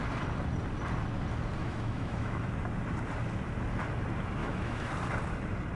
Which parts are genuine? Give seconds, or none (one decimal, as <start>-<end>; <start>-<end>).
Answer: 0.0-1.6; 2.5-4.4; 4.9-5.8